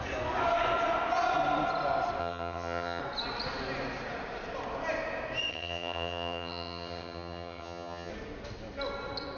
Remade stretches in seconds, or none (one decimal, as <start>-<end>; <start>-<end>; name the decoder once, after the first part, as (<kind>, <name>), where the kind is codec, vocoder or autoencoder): 2.2-3.0 (vocoder, HiFi-GAN); 5.5-8.1